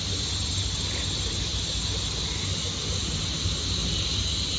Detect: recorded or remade recorded